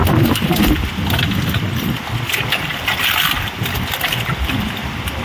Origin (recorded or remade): recorded